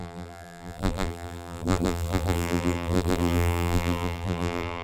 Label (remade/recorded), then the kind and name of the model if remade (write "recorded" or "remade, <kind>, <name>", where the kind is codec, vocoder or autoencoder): remade, vocoder, BigVGAN v2